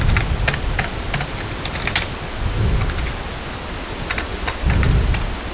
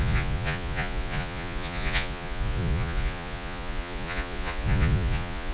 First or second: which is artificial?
second